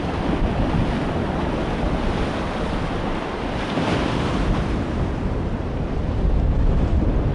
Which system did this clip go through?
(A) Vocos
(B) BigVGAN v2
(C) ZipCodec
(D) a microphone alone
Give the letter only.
B